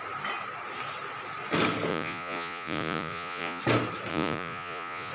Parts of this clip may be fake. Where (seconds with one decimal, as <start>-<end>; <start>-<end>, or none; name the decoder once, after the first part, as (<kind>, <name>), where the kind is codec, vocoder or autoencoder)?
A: 1.9-3.6 (vocoder, Vocos); 4.1-5.1